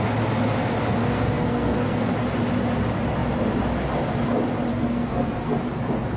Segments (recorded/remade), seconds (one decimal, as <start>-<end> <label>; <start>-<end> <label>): 0.0-1.0 recorded; 1.0-2.1 remade; 2.1-4.7 recorded; 4.7-5.6 remade; 5.6-6.2 recorded